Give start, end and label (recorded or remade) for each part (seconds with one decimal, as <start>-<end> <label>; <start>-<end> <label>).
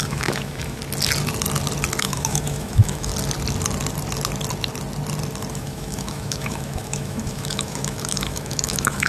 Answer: 0.0-0.8 remade; 0.8-2.0 recorded; 2.0-3.1 remade; 3.1-5.5 recorded; 5.5-9.1 remade